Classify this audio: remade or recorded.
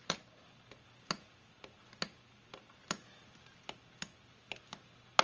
recorded